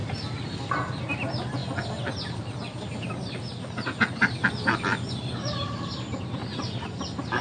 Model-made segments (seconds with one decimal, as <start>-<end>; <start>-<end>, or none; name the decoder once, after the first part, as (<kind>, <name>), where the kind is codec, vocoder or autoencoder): none